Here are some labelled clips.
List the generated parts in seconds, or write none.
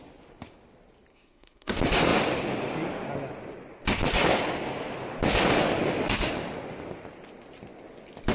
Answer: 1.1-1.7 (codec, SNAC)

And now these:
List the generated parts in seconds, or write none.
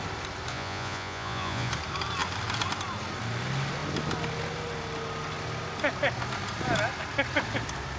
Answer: 0.5-1.7 (vocoder, Vocos)